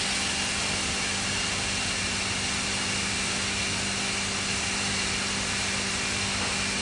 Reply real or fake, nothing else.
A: real